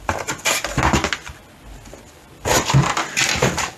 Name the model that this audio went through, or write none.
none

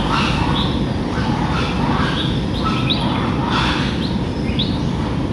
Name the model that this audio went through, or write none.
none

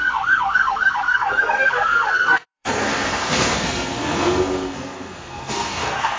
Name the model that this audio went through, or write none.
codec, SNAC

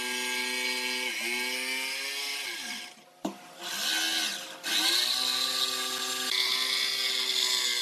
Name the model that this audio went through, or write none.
none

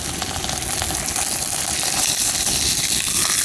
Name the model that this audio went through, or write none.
none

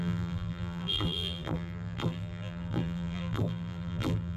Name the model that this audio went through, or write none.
vocoder, BigVGAN v2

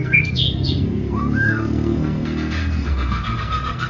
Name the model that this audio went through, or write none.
codec, SNAC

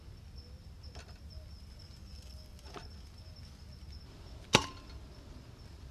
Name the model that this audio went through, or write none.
none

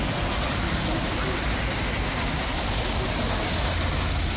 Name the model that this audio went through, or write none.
none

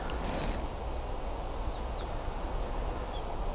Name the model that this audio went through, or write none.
none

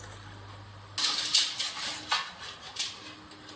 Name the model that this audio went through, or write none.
none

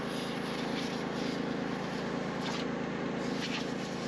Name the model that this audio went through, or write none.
none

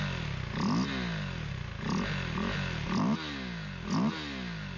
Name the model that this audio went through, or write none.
none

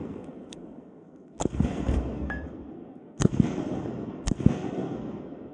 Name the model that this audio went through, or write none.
codec, SNAC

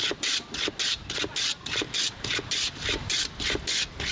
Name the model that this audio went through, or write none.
none